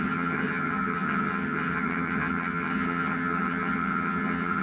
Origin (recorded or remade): remade